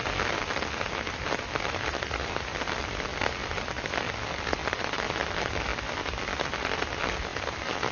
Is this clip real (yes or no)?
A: yes